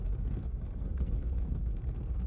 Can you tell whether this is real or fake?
fake